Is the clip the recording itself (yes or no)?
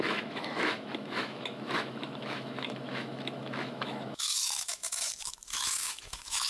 no